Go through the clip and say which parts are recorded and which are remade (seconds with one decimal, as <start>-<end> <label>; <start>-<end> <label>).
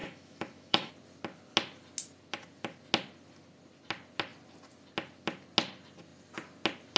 0.0-0.9 remade; 0.9-7.0 recorded